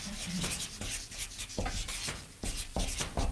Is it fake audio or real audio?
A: real